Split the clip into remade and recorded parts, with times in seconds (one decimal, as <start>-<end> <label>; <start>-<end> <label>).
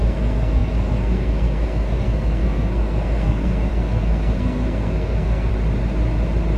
0.0-5.5 remade; 5.5-6.6 recorded